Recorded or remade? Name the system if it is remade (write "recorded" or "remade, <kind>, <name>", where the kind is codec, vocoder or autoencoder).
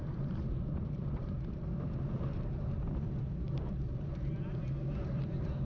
remade, vocoder, BigVGAN v2